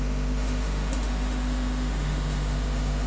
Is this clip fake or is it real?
fake